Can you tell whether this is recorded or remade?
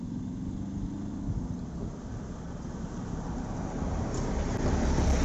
recorded